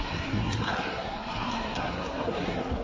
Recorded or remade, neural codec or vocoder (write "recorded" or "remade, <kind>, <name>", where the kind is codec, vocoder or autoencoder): remade, codec, SNAC